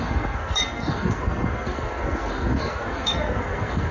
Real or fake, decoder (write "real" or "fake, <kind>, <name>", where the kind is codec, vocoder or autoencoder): fake, codec, SNAC